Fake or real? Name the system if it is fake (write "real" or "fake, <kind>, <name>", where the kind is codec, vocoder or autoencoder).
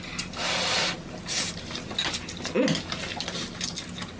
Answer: real